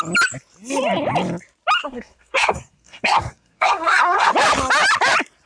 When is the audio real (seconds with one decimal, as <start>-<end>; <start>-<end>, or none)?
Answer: 0.0-1.8; 4.3-5.5